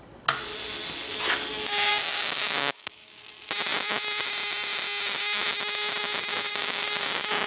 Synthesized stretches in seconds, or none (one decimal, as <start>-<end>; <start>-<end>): 1.9-3.2; 6.5-7.0

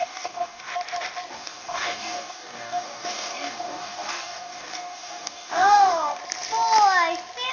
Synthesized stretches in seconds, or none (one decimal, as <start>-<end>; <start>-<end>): 0.0-0.7; 1.3-6.2

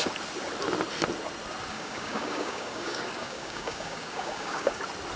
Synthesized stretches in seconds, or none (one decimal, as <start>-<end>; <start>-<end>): 1.7-4.8

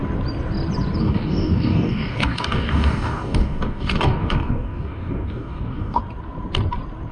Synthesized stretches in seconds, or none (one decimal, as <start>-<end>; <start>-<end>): 1.0-6.0

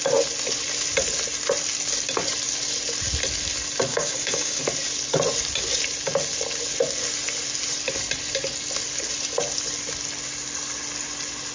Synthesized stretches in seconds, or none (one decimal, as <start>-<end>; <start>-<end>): 3.9-4.6

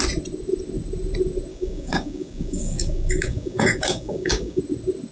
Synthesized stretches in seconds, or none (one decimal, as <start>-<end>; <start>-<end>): 1.5-4.6